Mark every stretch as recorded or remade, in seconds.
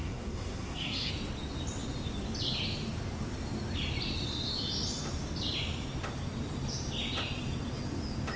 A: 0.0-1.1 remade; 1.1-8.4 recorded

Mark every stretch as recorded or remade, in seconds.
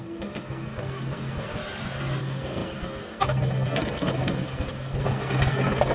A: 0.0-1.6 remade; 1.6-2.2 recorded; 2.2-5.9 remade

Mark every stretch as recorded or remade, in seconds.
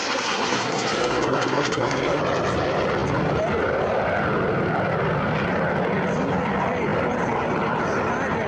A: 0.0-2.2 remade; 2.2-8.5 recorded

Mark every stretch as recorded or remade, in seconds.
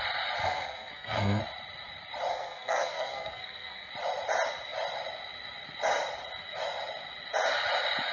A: 0.0-0.4 recorded; 0.4-1.4 remade; 1.4-2.3 recorded; 2.3-3.9 remade; 3.9-8.1 recorded